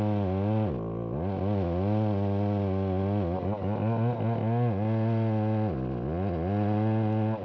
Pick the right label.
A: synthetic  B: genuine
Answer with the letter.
B